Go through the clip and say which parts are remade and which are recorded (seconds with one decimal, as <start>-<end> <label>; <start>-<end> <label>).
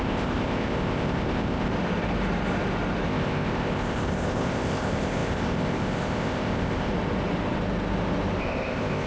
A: 0.0-1.7 remade; 1.7-3.1 recorded; 3.1-6.9 remade; 6.9-8.4 recorded; 8.4-9.1 remade